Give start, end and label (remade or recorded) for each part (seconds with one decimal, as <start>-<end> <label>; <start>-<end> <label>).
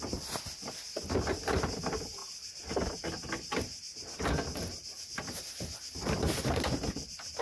0.0-7.4 recorded